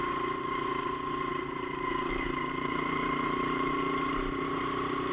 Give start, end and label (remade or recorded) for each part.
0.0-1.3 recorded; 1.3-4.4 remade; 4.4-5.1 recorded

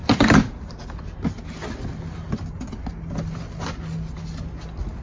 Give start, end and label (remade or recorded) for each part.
0.0-5.0 recorded

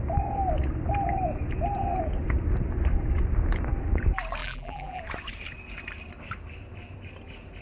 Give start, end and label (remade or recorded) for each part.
0.0-4.4 recorded; 4.4-5.0 remade; 5.0-7.6 recorded

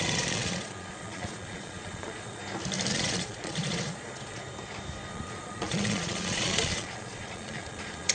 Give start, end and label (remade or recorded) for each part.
0.0-2.4 remade; 2.4-2.9 recorded; 2.9-4.4 remade; 4.4-5.1 recorded; 5.1-8.1 remade

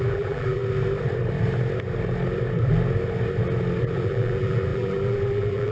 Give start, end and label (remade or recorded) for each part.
0.0-0.6 remade; 0.6-3.8 recorded; 3.8-5.7 remade